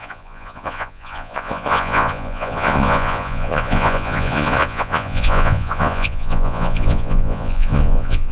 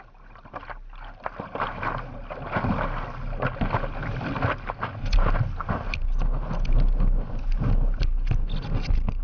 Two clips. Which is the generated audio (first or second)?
first